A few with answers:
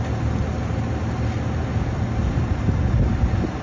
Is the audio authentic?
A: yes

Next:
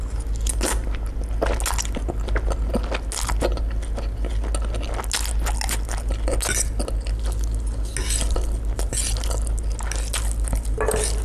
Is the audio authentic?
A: yes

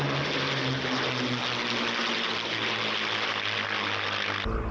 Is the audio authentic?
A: yes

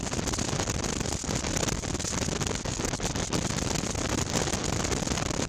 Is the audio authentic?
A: yes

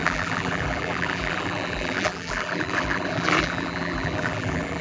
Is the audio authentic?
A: no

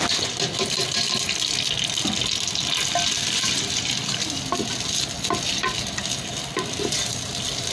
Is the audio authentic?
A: yes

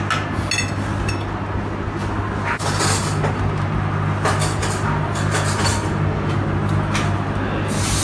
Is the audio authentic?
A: yes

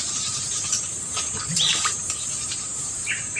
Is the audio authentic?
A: no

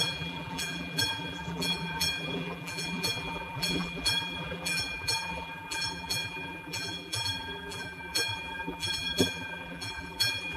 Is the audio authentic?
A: no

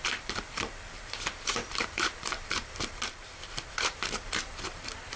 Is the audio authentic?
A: no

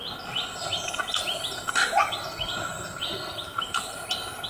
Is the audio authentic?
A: yes